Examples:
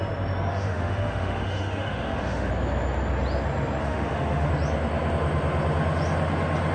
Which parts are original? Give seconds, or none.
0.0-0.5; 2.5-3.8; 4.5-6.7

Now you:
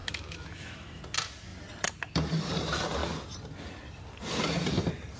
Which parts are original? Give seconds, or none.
1.0-5.2

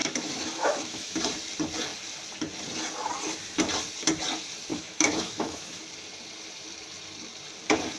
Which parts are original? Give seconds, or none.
1.2-4.7; 5.8-8.0

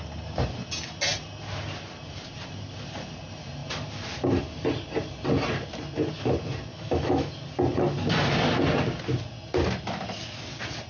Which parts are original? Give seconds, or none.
0.0-6.7; 7.3-10.9